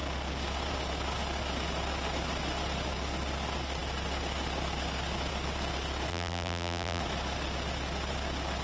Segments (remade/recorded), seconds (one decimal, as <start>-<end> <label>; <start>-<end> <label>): 0.0-6.1 recorded; 6.1-7.0 remade; 7.0-8.6 recorded